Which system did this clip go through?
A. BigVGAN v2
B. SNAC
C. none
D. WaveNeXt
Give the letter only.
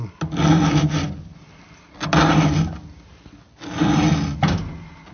C